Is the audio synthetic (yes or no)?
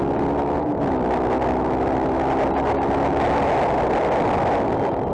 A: no